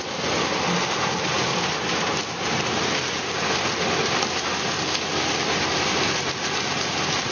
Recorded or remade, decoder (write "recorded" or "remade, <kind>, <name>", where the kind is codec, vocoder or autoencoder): recorded